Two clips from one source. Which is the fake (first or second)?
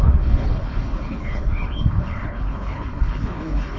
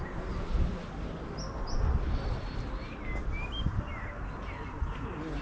first